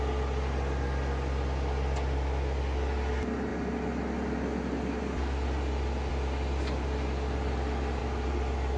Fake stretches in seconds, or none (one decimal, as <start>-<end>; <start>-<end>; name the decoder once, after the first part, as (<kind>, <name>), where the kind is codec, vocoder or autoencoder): 8.0-8.8 (vocoder, BigVGAN v2)